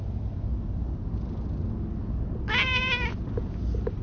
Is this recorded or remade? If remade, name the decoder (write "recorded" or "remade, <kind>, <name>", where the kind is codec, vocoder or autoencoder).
recorded